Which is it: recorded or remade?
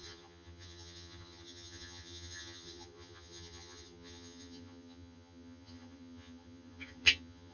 remade